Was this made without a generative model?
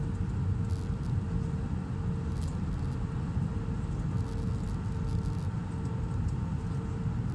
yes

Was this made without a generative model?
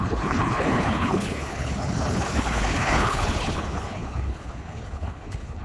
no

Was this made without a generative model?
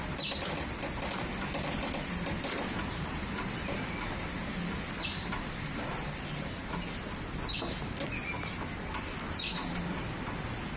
yes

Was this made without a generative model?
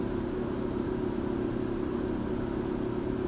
yes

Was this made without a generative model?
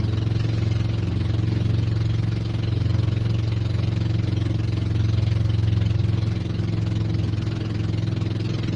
yes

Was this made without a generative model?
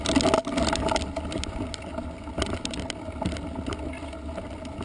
yes